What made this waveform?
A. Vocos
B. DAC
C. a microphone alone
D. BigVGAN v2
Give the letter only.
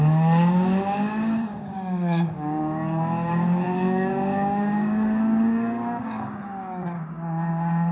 B